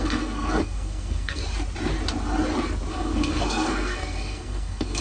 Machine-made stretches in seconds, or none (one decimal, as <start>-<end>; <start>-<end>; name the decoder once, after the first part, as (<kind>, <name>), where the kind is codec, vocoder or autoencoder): 0.0-1.4 (codec, SNAC); 2.9-5.0